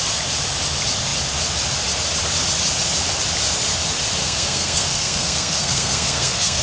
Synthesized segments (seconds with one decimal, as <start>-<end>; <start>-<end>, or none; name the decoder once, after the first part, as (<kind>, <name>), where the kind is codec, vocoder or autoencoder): 4.2-6.6 (codec, SNAC)